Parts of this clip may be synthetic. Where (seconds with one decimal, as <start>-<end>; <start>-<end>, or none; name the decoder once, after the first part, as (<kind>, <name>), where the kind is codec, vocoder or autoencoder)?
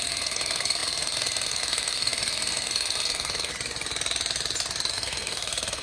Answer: 0.0-3.5 (codec, SNAC); 4.9-5.8